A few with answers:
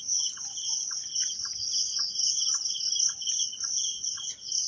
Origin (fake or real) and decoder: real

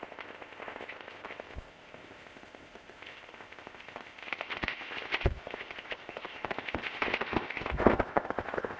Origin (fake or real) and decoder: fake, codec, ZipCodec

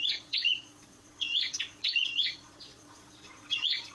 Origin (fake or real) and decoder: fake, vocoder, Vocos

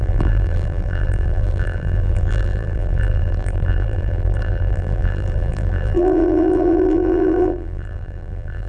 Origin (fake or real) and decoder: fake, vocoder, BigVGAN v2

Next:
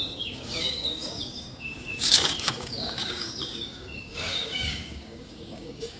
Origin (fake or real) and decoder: fake, codec, DAC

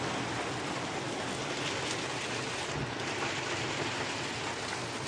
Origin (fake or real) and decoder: real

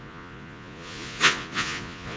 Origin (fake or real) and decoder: fake, vocoder, Vocos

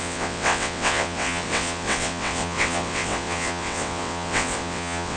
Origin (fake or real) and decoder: fake, vocoder, WaveNeXt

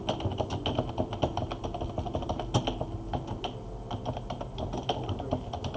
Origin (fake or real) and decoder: real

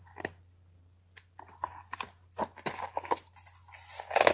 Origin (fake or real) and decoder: real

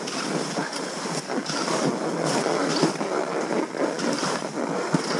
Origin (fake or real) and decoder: real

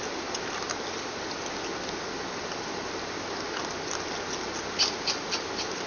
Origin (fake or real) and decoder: real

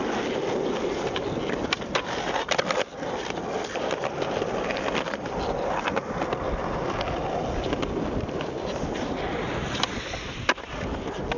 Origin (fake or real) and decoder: real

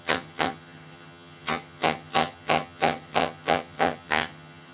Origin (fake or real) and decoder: fake, vocoder, HiFi-GAN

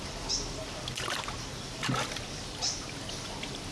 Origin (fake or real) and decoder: real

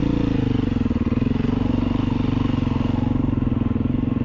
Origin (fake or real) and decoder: real